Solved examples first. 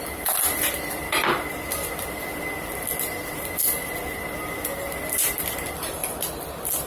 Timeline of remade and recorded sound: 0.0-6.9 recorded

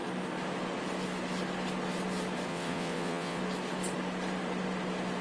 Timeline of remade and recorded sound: 0.0-2.5 recorded; 2.5-3.4 remade; 3.4-5.2 recorded

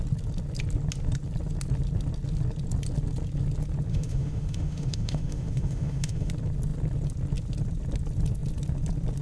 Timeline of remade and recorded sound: 0.0-3.9 recorded; 3.9-6.3 remade; 6.3-9.2 recorded

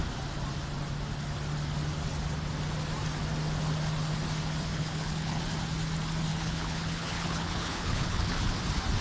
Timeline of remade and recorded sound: 0.0-4.7 recorded; 4.7-5.4 remade; 5.4-6.3 recorded; 6.3-8.5 remade; 8.5-9.0 recorded